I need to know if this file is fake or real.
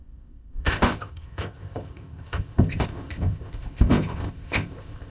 fake